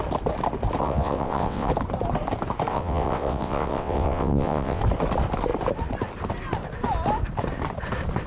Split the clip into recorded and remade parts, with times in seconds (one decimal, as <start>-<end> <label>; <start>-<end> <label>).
0.0-0.8 recorded; 0.8-1.7 remade; 1.7-2.7 recorded; 2.7-4.8 remade; 4.8-8.3 recorded